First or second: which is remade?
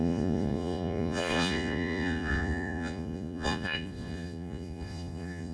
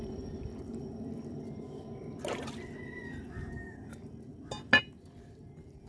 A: first